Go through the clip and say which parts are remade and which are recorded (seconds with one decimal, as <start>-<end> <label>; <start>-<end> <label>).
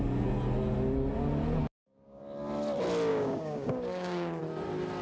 0.0-1.6 recorded; 1.6-2.2 remade; 2.2-3.1 recorded; 3.1-4.4 remade; 4.4-5.0 recorded